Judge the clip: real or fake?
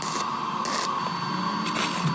real